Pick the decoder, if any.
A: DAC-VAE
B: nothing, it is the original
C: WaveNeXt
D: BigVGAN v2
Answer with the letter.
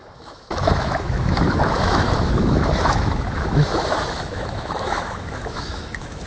A